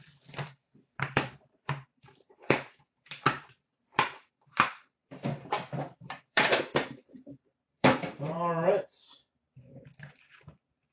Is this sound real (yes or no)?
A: no